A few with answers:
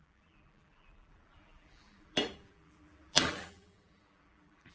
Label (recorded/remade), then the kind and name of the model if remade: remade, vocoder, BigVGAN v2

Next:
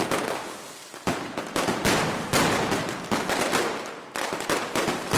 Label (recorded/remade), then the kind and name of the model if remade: recorded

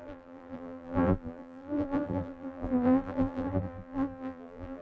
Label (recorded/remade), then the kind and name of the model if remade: remade, vocoder, BigVGAN v2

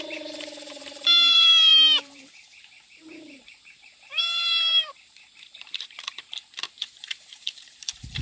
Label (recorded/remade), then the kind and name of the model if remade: remade, vocoder, BigVGAN v2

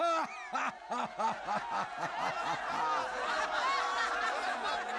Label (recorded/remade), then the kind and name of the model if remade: recorded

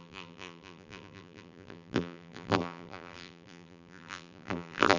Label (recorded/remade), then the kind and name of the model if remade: remade, vocoder, BigVGAN v2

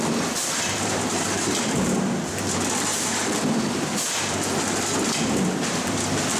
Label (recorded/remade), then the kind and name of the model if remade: remade, vocoder, BigVGAN v2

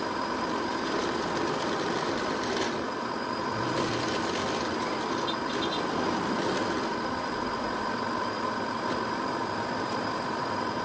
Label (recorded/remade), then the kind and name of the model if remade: remade, vocoder, BigVGAN v2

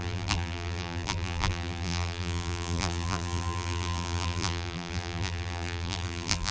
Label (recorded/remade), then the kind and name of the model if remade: remade, vocoder, BigVGAN v2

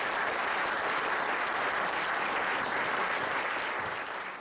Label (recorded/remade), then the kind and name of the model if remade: recorded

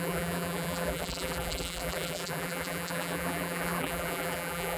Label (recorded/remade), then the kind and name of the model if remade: remade, vocoder, BigVGAN v2